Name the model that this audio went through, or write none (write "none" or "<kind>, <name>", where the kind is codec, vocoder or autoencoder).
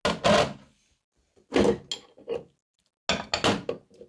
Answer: none